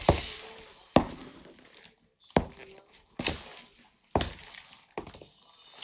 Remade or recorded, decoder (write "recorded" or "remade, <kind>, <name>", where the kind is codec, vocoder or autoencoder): recorded